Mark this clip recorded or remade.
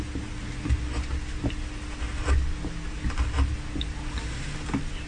recorded